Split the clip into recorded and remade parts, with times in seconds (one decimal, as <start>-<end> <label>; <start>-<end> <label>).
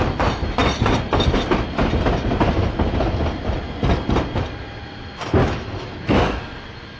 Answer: 0.0-5.4 recorded; 5.4-6.4 remade; 6.4-7.0 recorded